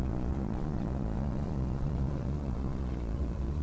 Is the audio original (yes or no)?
no